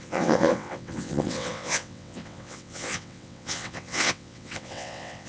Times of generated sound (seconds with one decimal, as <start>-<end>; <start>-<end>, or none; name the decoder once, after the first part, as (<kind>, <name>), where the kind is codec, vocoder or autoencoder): 0.0-5.3 (vocoder, WaveNeXt)